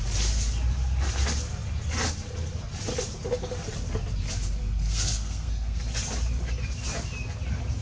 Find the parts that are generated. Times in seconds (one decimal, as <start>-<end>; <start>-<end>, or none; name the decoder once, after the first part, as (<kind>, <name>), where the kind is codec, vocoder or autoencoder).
4.6-5.8 (codec, SNAC)